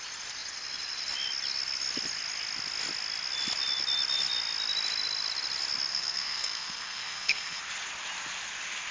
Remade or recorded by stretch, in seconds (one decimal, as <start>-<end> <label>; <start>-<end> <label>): 0.0-5.9 recorded; 5.9-7.6 remade; 7.6-8.9 recorded